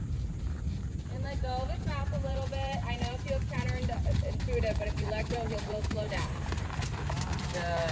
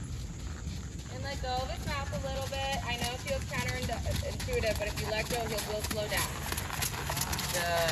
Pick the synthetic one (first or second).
first